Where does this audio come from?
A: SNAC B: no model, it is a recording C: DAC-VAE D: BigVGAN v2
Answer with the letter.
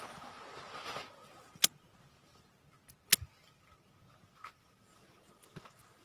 B